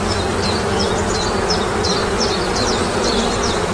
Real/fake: fake